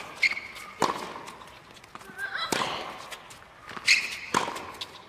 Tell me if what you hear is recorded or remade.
recorded